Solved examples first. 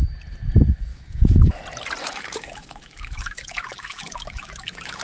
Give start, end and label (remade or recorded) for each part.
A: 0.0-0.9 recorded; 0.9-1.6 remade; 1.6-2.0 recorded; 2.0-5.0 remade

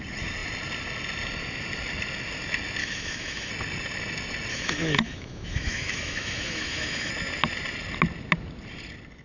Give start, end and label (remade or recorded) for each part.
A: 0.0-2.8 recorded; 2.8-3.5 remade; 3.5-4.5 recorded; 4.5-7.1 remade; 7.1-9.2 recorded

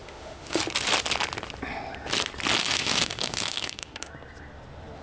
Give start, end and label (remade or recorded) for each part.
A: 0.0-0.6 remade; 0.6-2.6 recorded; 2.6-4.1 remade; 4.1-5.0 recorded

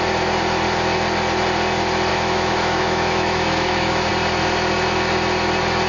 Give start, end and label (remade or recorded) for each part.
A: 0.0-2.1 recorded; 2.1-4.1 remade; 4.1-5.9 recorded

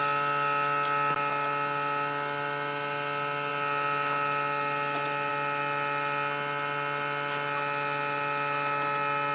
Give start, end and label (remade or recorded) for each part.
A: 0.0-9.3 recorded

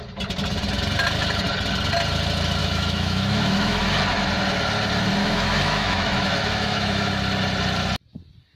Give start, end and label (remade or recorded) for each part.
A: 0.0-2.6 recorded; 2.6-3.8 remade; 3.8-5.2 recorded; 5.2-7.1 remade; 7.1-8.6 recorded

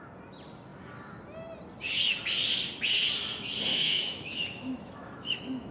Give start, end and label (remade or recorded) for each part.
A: 0.0-3.7 recorded; 3.7-5.7 remade